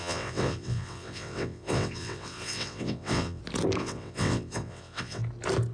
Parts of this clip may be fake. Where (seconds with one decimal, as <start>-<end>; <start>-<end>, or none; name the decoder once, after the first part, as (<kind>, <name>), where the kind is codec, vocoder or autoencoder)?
0.0-3.4 (vocoder, WaveNeXt); 3.8-5.2